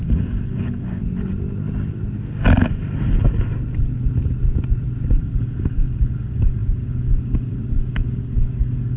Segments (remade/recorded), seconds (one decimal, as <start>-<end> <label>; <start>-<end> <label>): 0.0-1.0 remade; 1.0-5.2 recorded; 5.2-9.0 remade